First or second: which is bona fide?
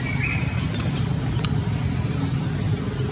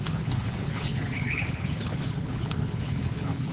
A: first